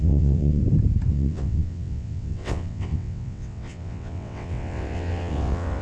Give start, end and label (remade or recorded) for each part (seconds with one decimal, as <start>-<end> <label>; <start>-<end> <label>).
0.0-0.6 remade; 0.6-1.1 recorded; 1.1-5.8 remade